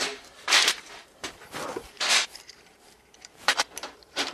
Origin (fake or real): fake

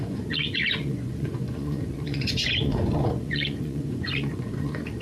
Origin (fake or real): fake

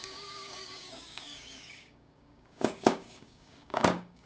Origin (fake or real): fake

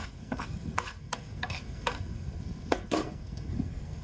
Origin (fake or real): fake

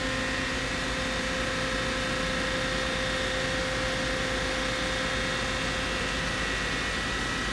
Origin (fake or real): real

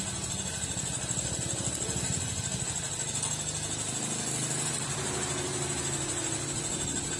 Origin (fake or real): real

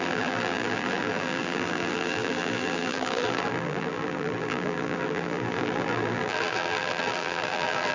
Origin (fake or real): fake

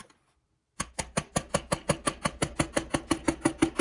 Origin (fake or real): real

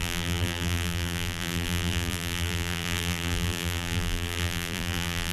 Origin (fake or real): fake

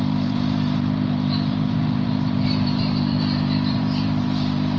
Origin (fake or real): fake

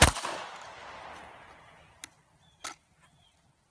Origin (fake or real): real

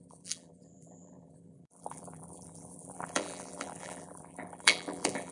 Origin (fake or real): fake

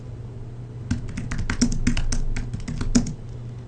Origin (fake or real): real